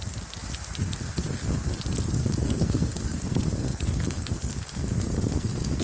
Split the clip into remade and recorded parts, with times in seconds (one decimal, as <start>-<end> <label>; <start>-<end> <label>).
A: 0.0-0.8 recorded; 0.8-1.8 remade; 1.8-2.2 recorded; 2.2-5.8 remade